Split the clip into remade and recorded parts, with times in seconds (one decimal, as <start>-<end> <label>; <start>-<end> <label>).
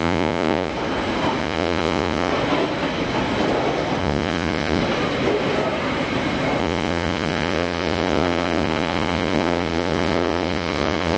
0.0-0.7 remade; 0.7-1.4 recorded; 1.4-2.3 remade; 2.3-4.0 recorded; 4.0-4.8 remade; 4.8-6.6 recorded; 6.6-11.2 remade